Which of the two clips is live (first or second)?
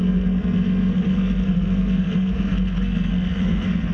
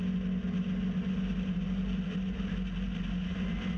second